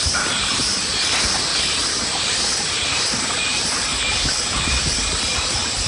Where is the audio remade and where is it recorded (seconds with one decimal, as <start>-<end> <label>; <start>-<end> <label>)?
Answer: 0.0-5.9 recorded